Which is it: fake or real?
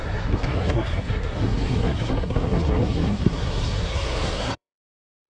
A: fake